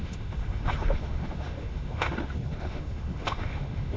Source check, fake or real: fake